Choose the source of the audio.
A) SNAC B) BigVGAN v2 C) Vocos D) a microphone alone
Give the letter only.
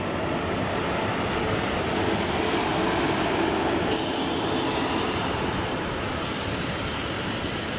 D